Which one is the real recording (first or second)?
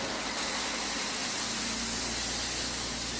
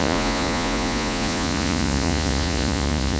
first